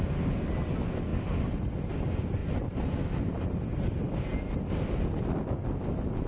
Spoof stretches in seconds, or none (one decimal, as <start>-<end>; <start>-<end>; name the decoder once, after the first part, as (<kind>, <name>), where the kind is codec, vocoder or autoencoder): none